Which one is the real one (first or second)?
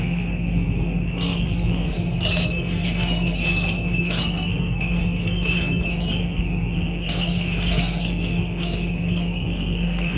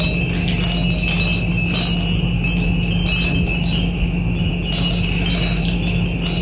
second